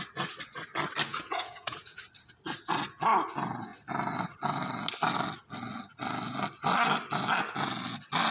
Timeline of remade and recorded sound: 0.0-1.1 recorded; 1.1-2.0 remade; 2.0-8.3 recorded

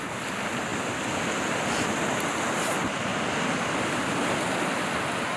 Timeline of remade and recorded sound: 0.0-5.4 recorded

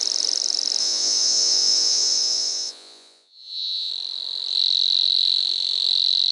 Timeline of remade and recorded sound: 0.0-0.8 recorded; 0.8-3.9 remade; 3.9-6.3 recorded

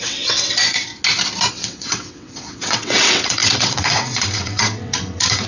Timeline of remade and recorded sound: 0.0-0.9 remade; 0.9-1.5 recorded; 1.5-5.5 remade